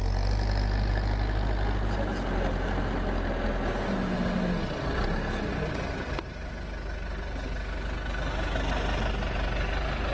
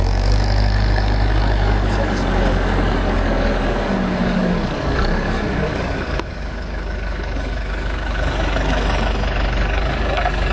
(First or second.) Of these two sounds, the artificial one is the second